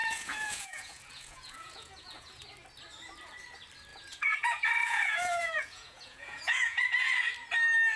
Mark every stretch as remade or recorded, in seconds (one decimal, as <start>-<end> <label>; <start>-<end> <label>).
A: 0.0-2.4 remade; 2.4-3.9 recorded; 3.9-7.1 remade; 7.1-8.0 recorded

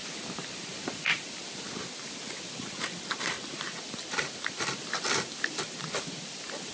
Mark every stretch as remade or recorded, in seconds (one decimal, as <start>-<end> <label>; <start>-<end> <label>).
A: 0.0-6.7 remade

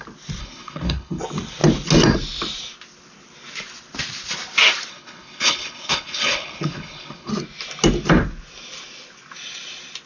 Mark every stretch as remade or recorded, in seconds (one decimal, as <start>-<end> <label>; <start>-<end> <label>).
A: 0.0-0.4 recorded; 0.4-1.2 remade; 1.2-4.9 recorded; 4.9-7.3 remade; 7.3-10.1 recorded

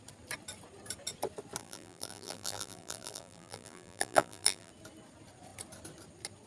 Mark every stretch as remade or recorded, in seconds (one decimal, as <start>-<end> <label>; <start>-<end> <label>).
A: 0.0-1.6 recorded; 1.6-4.7 remade; 4.7-6.5 recorded

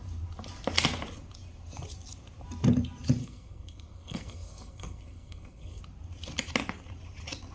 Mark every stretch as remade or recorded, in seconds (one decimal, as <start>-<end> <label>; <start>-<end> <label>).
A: 0.0-3.2 recorded; 3.2-5.8 remade; 5.8-7.5 recorded

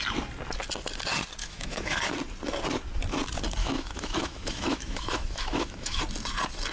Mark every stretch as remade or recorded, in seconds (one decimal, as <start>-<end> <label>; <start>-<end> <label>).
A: 0.0-1.4 recorded; 1.4-2.0 remade; 2.0-3.6 recorded; 3.6-6.0 remade; 6.0-6.7 recorded